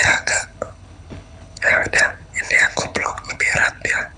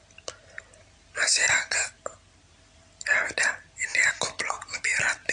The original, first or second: second